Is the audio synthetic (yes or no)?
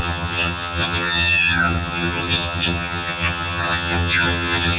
yes